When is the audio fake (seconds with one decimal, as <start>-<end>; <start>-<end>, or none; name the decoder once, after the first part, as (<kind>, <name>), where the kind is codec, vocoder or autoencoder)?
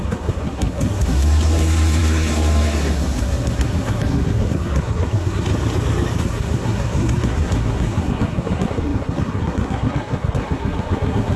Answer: 0.0-5.5 (codec, SNAC); 6.2-11.4